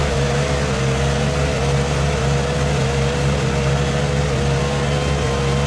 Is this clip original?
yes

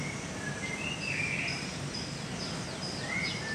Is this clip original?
yes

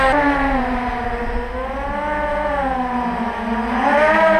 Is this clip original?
yes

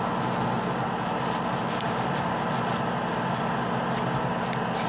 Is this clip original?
yes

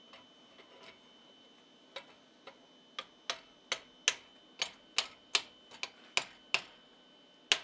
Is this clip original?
yes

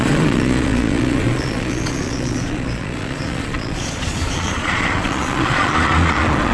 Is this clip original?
no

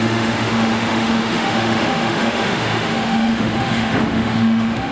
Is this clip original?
no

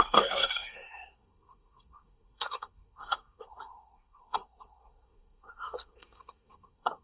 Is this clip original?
no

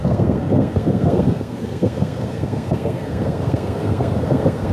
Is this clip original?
no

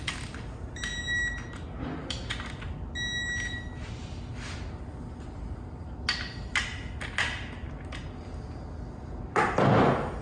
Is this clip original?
yes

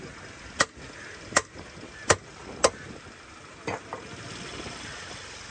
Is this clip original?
yes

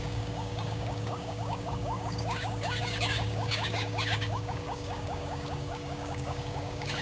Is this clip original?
no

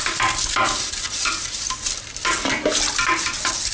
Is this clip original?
yes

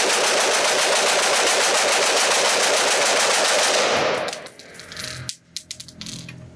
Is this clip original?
yes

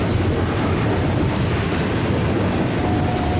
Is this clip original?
yes